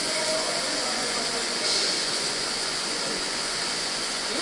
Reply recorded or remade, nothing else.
remade